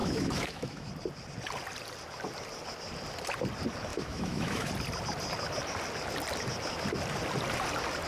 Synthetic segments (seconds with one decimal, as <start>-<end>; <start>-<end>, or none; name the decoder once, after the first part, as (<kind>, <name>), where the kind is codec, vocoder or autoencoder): 0.0-0.9 (autoencoder, DAC-VAE); 3.9-4.7